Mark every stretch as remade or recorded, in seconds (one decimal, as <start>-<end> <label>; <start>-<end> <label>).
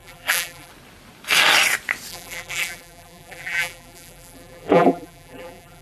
0.0-0.7 remade; 0.7-2.1 recorded; 2.1-5.8 remade